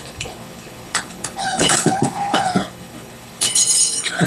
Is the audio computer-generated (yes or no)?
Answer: yes